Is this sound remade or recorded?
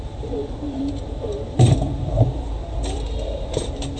remade